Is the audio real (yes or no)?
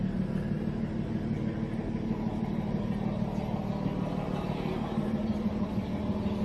yes